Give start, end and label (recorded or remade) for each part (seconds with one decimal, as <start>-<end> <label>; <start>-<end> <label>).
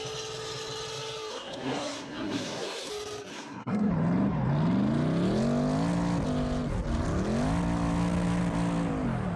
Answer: 0.0-1.3 recorded; 1.3-2.9 remade; 2.9-3.3 recorded; 3.3-3.9 remade; 3.9-9.4 recorded